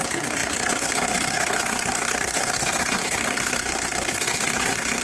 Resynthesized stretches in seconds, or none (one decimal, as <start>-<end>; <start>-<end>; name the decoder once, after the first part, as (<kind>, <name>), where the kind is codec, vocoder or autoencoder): 0.0-5.0 (codec, SNAC)